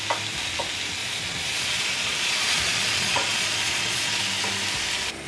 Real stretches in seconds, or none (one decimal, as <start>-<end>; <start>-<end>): 0.0-1.0; 4.2-5.3